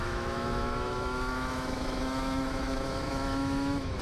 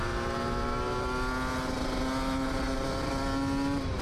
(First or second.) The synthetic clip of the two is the first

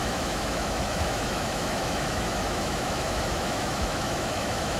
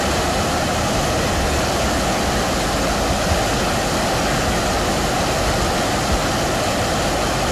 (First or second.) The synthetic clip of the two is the first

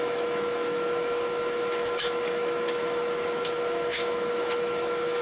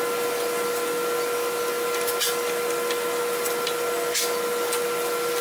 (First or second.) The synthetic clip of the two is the first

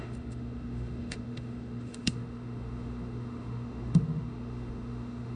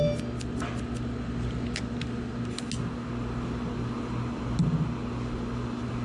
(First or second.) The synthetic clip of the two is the first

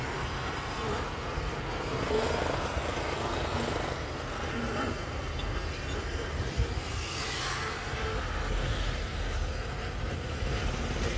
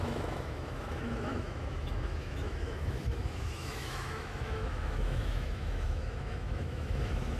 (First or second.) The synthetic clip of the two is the second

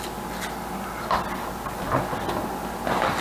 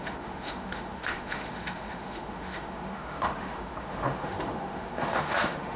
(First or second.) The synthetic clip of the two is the second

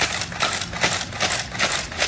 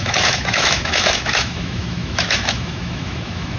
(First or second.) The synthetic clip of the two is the second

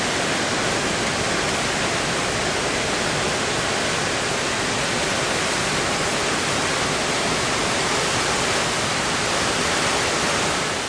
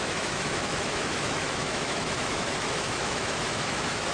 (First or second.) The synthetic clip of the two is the second